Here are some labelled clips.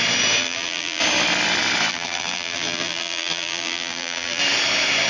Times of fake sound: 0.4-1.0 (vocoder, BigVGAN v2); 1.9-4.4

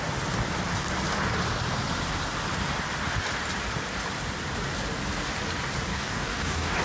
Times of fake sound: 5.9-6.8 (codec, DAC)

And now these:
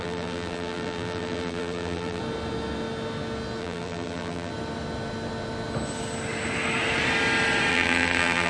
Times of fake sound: 0.0-2.2 (vocoder, BigVGAN v2); 3.6-4.5; 7.7-8.5

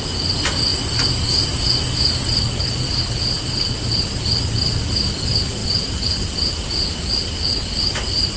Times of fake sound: 5.6-8.4 (vocoder, BigVGAN v2)

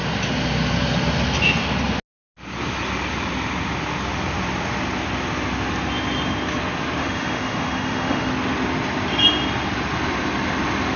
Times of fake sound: 7.0-8.3 (autoencoder, DAC-VAE)

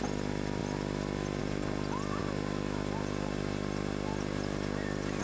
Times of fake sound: none

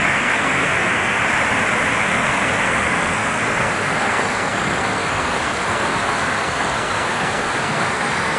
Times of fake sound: 0.0-1.2 (codec, SNAC); 2.0-8.4

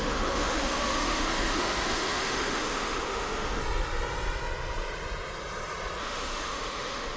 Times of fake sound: 0.0-3.6 (autoencoder, DAC-VAE); 6.0-7.2